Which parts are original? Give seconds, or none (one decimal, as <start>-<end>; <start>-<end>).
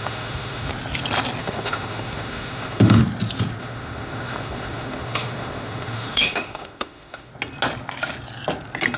0.7-1.4; 3.0-3.6; 7.3-9.0